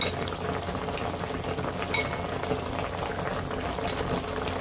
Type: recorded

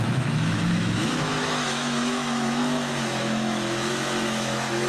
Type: remade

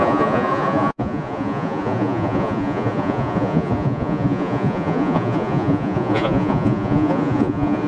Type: remade